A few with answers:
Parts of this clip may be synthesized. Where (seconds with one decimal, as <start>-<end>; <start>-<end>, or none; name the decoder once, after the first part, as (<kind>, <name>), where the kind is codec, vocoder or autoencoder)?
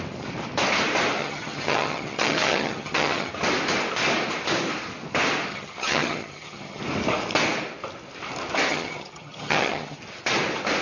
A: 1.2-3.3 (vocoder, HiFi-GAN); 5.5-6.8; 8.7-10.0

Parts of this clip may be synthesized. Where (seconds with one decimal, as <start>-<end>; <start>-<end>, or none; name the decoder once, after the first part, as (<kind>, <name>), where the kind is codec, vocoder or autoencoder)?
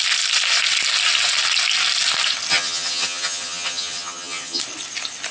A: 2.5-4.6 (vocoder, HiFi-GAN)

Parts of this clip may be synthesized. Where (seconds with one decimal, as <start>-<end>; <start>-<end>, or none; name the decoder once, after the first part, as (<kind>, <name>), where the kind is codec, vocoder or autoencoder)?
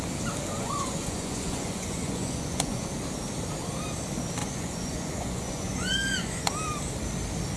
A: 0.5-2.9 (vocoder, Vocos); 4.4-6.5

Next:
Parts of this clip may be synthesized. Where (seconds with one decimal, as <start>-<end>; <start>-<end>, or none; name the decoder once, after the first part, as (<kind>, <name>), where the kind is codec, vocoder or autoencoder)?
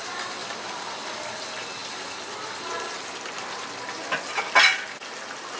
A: none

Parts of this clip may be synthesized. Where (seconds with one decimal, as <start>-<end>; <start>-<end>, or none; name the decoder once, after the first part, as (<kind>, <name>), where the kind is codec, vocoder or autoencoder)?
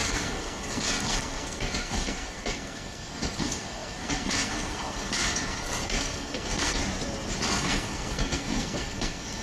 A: 0.0-6.8 (codec, SNAC); 7.4-9.4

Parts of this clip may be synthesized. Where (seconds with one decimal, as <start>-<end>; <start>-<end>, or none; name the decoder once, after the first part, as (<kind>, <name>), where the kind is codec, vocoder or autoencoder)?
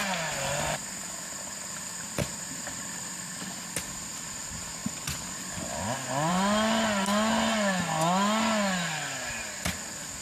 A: none